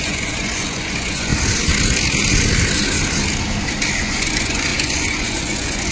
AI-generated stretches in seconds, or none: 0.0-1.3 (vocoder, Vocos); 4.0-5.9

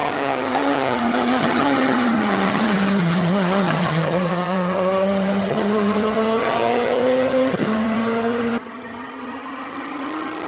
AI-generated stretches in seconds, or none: 0.0-10.5 (vocoder, HiFi-GAN)

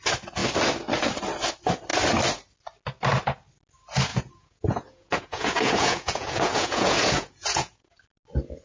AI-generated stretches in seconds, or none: 4.1-8.0 (vocoder, Vocos)